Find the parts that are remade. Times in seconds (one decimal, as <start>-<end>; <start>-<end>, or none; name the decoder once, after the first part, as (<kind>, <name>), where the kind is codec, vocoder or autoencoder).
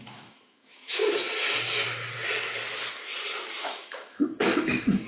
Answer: 0.0-1.0 (autoencoder, DAC-VAE); 3.6-5.1